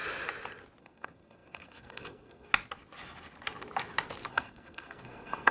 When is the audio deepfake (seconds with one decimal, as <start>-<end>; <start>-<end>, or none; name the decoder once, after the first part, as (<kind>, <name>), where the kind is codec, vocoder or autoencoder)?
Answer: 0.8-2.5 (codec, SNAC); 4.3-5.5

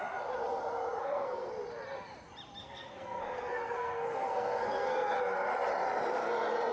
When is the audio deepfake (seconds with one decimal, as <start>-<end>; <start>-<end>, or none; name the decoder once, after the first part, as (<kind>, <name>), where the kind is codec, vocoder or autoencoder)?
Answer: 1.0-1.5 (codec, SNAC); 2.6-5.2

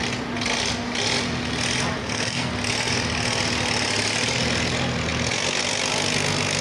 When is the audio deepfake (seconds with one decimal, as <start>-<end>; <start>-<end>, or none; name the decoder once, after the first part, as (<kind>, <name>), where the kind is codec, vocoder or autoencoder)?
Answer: 2.0-2.5 (codec, SNAC)

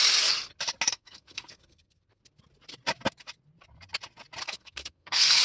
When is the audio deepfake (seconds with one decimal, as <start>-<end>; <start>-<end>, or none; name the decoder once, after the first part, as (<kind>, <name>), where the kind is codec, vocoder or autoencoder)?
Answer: 0.9-2.2 (codec, SNAC); 4.4-5.4

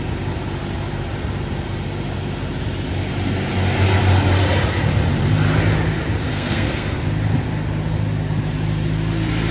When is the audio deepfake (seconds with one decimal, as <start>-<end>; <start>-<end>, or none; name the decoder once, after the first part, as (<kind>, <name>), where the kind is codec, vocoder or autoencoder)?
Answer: 6.3-7.0 (codec, SNAC)

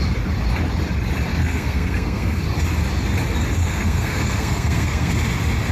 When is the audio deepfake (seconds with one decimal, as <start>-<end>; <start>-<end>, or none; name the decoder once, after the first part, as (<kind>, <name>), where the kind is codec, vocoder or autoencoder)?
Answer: 1.3-2.4 (codec, SNAC); 3.6-5.1

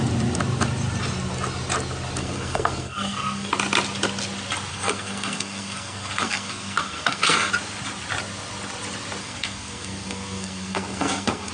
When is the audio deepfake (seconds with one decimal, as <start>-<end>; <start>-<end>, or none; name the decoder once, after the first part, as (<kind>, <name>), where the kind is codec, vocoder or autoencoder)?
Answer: 2.2-3.5 (codec, SNAC); 4.7-7.5; 9.2-11.5

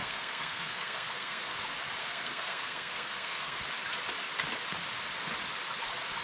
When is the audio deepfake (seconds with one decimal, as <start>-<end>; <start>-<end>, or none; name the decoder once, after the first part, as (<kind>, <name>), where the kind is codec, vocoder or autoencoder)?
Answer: 0.0-1.5 (codec, SNAC); 2.0-3.6